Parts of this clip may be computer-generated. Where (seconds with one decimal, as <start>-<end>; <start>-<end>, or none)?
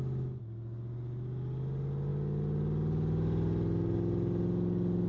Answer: none